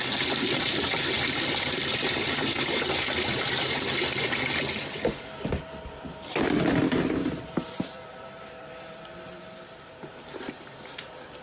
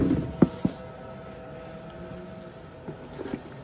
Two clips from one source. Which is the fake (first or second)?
first